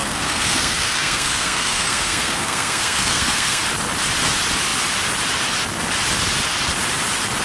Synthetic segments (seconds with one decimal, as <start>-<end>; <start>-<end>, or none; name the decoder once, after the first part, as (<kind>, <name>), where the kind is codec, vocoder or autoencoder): 0.0-3.6 (codec, SNAC)